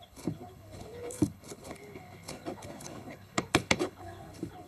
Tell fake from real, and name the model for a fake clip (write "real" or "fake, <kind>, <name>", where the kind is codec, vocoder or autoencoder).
fake, codec, HILCodec